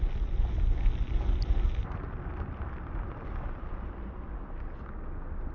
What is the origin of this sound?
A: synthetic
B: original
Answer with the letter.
B